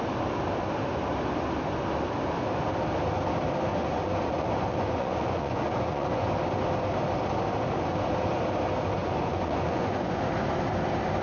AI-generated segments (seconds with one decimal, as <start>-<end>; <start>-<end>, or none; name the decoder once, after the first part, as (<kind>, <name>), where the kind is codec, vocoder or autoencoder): 3.7-6.3 (vocoder, Vocos); 9.0-10.2